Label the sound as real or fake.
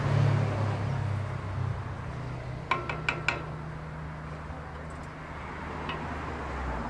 real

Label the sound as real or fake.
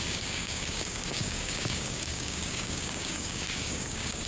fake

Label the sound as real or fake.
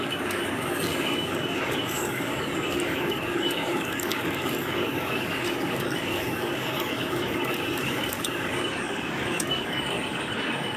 fake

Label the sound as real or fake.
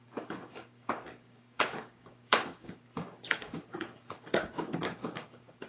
fake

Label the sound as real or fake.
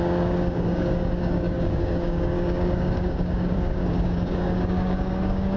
fake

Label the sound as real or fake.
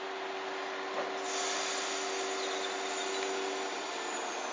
real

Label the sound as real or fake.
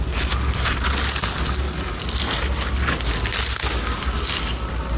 real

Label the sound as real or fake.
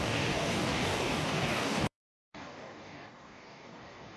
fake